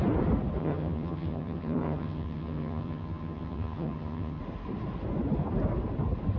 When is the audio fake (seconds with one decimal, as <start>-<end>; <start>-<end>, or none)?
0.6-4.4